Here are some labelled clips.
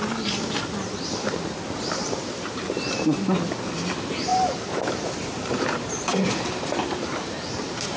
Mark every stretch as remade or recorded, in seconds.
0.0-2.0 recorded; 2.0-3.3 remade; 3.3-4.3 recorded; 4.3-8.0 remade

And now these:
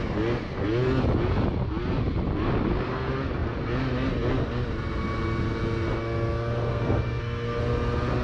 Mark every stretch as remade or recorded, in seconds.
0.0-6.7 recorded; 6.7-7.6 remade; 7.6-8.2 recorded